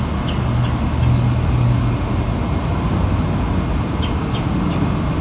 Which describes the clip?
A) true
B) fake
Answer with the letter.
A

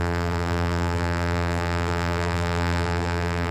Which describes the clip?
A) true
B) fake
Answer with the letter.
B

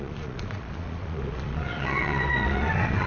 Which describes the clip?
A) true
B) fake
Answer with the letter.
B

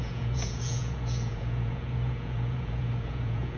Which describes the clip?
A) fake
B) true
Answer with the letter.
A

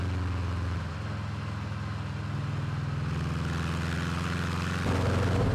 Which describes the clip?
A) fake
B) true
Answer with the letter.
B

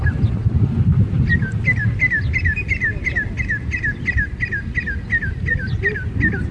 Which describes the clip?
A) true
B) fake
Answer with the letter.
A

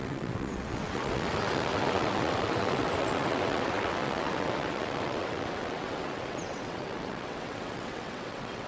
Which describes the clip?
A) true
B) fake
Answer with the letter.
B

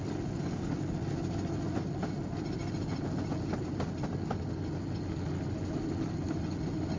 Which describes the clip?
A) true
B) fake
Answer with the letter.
A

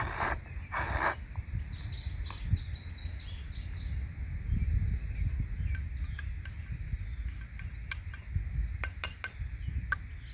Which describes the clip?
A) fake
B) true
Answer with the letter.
B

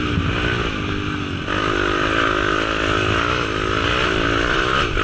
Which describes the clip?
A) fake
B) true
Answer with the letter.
B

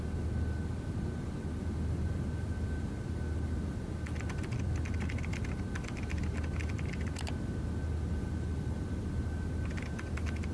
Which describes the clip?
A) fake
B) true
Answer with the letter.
B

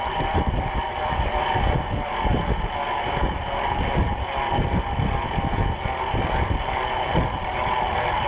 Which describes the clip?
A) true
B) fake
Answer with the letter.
A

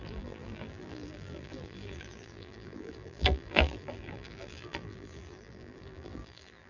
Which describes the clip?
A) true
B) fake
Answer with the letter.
B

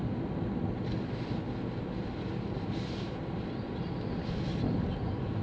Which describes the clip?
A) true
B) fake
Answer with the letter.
A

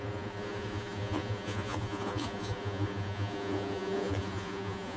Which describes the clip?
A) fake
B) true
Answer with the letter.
A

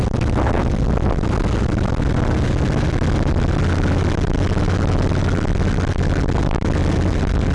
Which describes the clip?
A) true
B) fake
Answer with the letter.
A